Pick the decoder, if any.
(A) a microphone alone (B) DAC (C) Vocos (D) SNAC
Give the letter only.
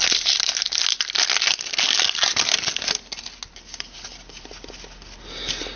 A